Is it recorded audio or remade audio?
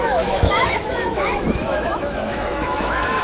remade